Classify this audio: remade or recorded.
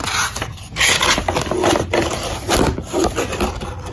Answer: recorded